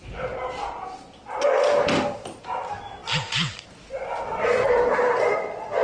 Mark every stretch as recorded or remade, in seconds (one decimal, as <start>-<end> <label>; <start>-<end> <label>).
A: 0.0-5.8 recorded